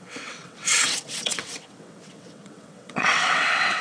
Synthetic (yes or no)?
yes